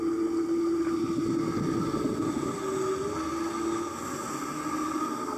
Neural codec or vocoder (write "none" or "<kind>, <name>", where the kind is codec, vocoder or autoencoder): none